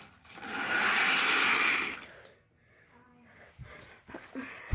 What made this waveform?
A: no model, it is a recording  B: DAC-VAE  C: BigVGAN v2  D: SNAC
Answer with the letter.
A